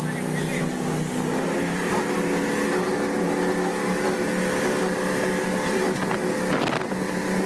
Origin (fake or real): real